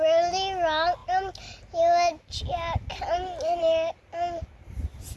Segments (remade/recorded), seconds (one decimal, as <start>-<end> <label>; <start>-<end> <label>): 0.0-5.2 recorded